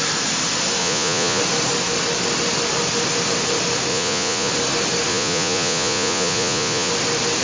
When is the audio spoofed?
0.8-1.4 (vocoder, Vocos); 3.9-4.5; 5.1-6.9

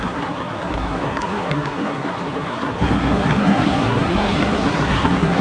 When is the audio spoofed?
0.0-5.4 (codec, SNAC)